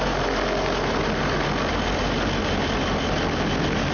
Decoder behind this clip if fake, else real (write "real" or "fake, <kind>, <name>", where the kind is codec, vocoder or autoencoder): real